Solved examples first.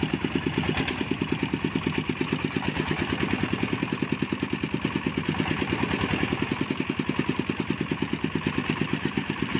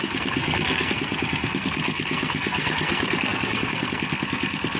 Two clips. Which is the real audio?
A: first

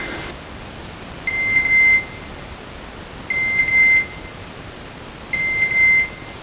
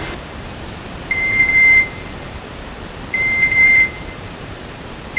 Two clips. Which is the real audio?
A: first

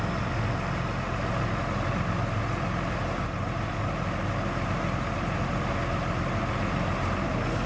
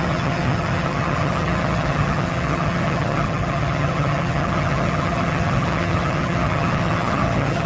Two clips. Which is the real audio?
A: first